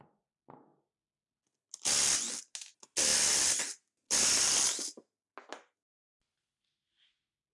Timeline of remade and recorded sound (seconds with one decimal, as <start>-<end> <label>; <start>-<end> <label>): 0.0-7.5 recorded